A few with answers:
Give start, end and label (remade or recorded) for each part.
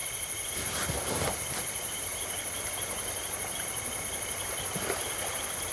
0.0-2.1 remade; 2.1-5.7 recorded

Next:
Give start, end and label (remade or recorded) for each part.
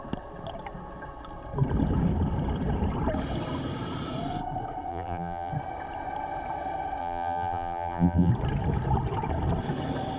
0.0-4.9 recorded; 4.9-5.5 remade; 5.5-7.0 recorded; 7.0-8.3 remade; 8.3-10.2 recorded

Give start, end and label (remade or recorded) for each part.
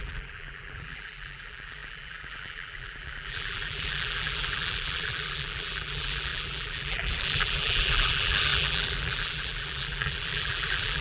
0.0-11.0 remade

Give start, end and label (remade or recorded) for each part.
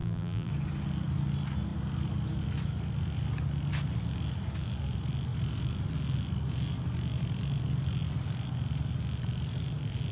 0.0-0.5 remade; 0.5-10.1 recorded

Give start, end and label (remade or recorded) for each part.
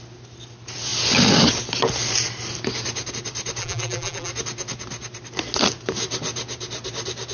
0.0-3.6 recorded; 3.6-4.3 remade; 4.3-7.3 recorded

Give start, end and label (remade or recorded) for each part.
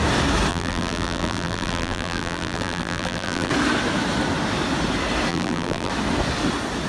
0.0-0.5 recorded; 0.5-3.5 remade; 3.5-5.3 recorded; 5.3-5.9 remade; 5.9-6.9 recorded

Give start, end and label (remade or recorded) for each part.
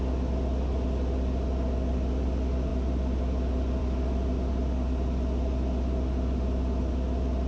0.0-7.5 recorded